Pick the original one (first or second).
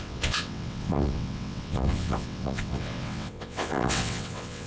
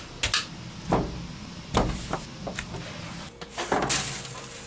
second